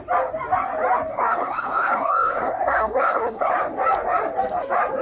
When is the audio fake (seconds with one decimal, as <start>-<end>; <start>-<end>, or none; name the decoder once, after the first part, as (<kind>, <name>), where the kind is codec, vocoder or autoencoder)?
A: 1.1-3.5 (codec, SNAC)